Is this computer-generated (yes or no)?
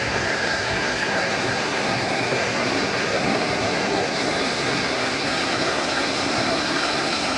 yes